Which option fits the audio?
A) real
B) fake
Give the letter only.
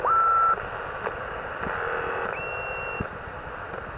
A